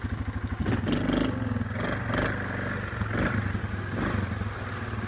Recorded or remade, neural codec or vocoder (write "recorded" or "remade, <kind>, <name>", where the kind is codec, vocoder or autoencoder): recorded